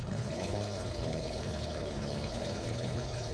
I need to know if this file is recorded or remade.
remade